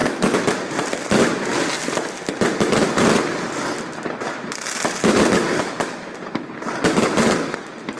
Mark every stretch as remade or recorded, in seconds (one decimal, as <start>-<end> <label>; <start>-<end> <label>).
0.0-8.0 recorded